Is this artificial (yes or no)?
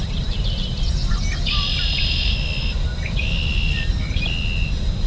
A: no